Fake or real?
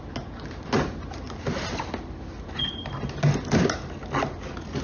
real